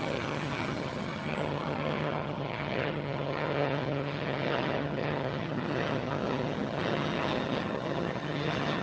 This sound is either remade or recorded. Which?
remade